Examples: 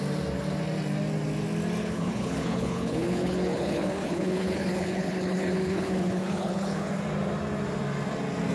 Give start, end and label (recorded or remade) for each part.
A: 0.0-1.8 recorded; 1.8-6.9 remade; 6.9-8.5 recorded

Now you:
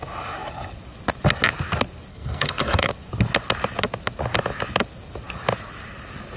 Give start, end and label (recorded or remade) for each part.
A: 0.0-2.1 recorded; 2.1-2.9 remade; 2.9-6.4 recorded

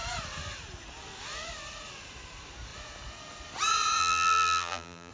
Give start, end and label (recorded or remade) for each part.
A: 0.0-4.0 recorded; 4.0-5.1 remade

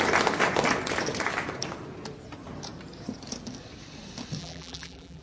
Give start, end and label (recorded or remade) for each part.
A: 0.0-4.4 recorded; 4.4-5.2 remade

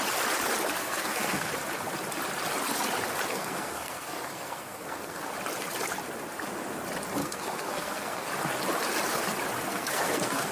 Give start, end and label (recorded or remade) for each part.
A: 0.0-0.8 recorded; 0.8-1.5 remade; 1.5-3.3 recorded; 3.3-5.3 remade; 5.3-7.2 recorded; 7.2-8.3 remade; 8.3-9.7 recorded; 9.7-10.5 remade

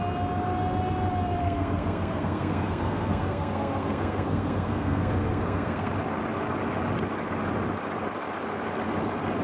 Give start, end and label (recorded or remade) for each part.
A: 0.0-1.4 recorded; 1.4-5.9 remade; 5.9-9.4 recorded

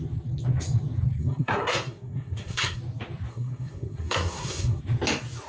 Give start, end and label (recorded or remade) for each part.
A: 0.0-1.2 recorded; 1.2-2.8 remade; 2.8-3.3 recorded; 3.3-4.8 remade; 4.8-5.5 recorded

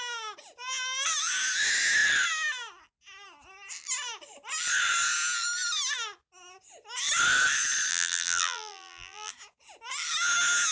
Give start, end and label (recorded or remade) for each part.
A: 0.0-7.9 recorded; 7.9-9.3 remade; 9.3-10.7 recorded